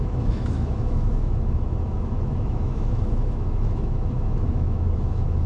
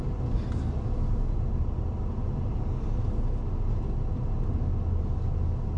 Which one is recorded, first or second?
second